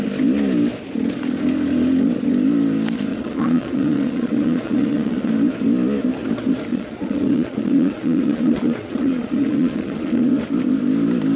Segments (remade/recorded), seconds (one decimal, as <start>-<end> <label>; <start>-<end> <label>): 0.0-3.1 recorded; 3.1-5.3 remade; 5.3-6.7 recorded; 6.7-10.3 remade; 10.3-11.4 recorded